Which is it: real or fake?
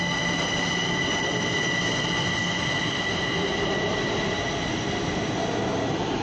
real